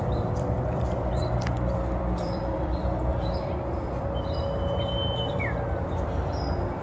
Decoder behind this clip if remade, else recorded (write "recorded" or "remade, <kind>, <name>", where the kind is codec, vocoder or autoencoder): remade, vocoder, BigVGAN v2